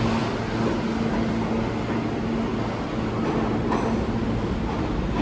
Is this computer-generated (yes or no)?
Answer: no